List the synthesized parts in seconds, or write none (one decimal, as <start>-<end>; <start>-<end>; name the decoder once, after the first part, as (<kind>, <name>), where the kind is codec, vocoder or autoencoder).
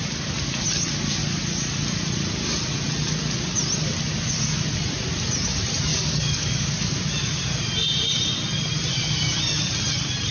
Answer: 5.9-6.9 (codec, DAC)